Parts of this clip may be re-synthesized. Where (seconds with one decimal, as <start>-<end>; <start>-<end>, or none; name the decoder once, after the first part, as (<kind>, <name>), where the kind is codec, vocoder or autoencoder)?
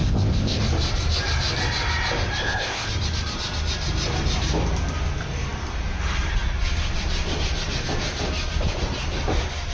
0.0-0.6 (codec, ZipCodec); 2.4-2.9